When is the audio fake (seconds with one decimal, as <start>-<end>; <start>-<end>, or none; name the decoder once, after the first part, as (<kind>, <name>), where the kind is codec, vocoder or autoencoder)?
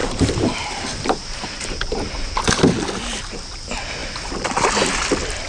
none